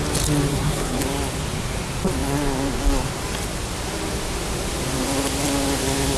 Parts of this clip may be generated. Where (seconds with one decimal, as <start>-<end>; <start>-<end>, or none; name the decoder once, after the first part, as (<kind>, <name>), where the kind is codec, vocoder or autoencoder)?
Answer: 0.5-1.0 (codec, SNAC)